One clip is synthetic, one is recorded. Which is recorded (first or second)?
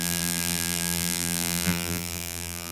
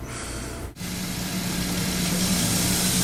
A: second